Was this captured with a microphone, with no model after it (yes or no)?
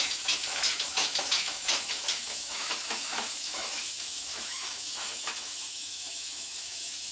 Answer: no